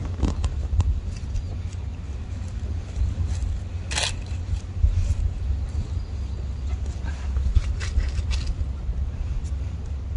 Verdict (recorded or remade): recorded